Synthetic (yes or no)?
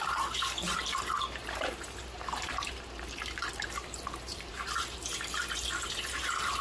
yes